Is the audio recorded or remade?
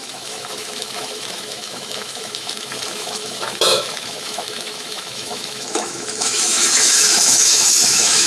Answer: remade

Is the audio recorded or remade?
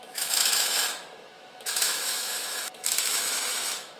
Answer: remade